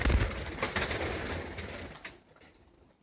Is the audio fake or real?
real